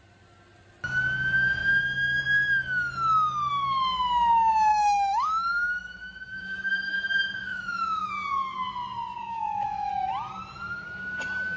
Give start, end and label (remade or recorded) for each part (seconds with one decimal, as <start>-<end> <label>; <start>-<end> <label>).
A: 0.0-1.6 recorded; 1.6-2.2 remade; 2.2-4.7 recorded; 4.7-8.1 remade; 8.1-9.2 recorded; 9.2-9.9 remade; 9.9-11.6 recorded

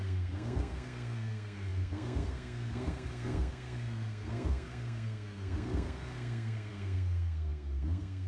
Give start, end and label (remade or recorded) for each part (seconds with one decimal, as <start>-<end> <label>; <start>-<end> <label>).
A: 0.0-8.3 remade

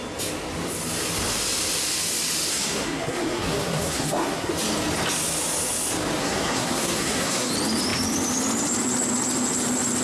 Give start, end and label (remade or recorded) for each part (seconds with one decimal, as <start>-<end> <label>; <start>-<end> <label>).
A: 0.0-2.5 recorded; 2.5-4.5 remade; 4.5-6.2 recorded; 6.2-7.5 remade; 7.5-10.0 recorded